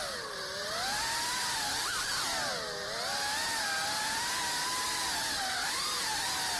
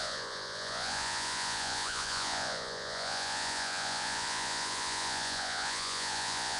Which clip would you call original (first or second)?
first